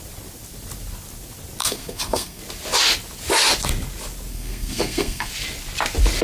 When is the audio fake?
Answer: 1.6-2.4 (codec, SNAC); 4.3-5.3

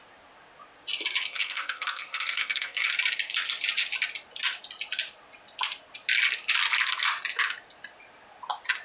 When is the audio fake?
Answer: 1.3-2.9 (codec, SNAC)

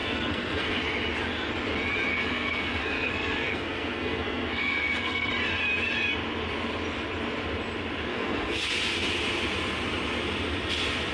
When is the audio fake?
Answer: 0.0-0.8 (codec, SNAC); 2.1-5.3; 8.1-8.7

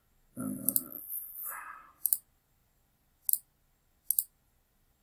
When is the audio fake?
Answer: none